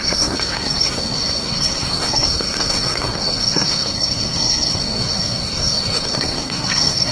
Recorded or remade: remade